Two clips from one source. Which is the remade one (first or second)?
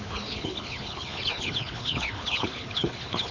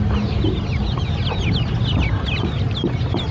first